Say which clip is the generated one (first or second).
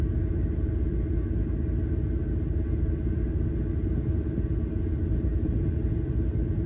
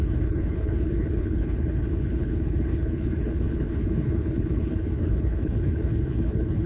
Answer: second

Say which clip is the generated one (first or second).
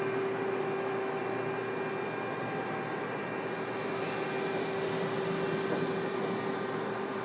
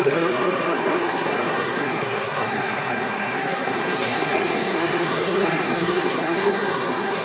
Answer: second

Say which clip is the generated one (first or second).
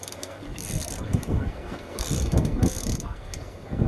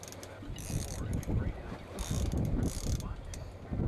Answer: first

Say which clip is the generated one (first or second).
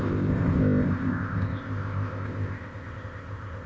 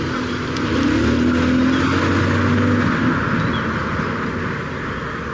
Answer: first